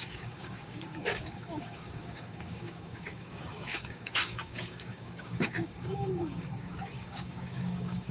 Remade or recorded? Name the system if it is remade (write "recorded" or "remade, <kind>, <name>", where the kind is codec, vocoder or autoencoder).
remade, codec, DAC